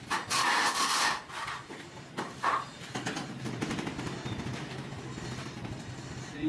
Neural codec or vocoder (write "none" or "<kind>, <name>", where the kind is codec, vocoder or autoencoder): vocoder, BigVGAN v2